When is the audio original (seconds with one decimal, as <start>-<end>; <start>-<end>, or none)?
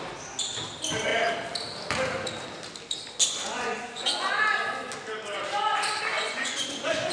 0.0-3.4; 4.4-6.1